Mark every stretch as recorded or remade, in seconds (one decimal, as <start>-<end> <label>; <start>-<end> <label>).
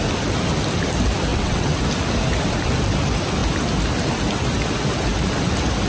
0.0-1.3 recorded; 1.3-1.8 remade; 1.8-5.9 recorded